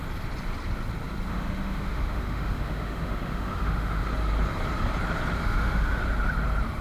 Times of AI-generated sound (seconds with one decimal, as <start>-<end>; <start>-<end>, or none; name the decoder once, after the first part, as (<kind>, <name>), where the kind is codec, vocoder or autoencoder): 1.3-4.0 (autoencoder, DAC-VAE); 5.4-6.0